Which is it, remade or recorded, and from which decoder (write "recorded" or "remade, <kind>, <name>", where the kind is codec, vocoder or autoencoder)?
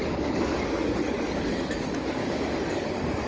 remade, codec, DAC